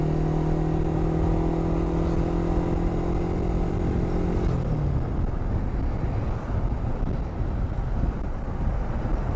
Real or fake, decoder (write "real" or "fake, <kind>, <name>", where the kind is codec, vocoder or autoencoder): real